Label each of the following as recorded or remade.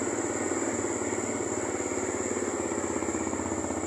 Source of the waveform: recorded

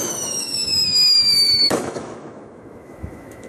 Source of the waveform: remade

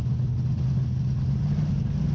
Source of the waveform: recorded